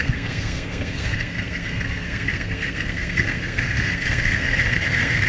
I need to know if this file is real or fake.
fake